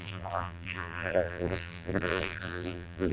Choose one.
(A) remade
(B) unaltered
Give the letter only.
A